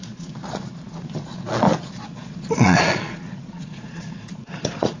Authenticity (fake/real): fake